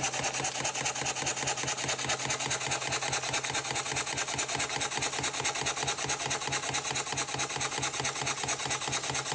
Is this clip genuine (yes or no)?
yes